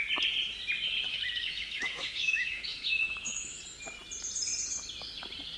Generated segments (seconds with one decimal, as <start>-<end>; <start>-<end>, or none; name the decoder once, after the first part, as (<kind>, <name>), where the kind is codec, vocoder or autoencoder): 1.1-3.6 (autoencoder, DAC-VAE)